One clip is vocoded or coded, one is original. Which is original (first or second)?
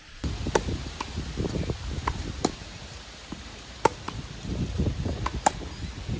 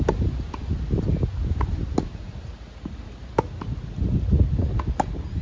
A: second